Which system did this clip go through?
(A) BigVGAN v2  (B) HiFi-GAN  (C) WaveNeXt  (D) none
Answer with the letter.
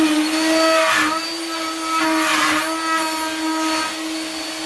D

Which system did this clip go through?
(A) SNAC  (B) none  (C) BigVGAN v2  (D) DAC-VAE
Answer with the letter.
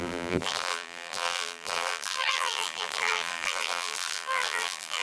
C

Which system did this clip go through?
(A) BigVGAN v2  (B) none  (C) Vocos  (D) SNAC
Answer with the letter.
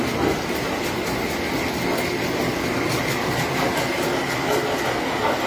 B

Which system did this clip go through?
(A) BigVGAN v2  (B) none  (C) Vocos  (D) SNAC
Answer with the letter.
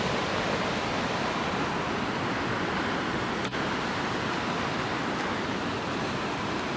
B